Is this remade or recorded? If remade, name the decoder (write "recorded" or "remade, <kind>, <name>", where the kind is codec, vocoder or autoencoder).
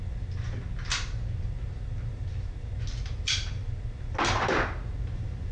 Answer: recorded